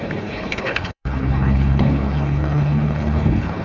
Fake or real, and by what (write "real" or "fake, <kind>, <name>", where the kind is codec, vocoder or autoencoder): fake, codec, HILCodec